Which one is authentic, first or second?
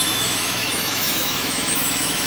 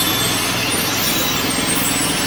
second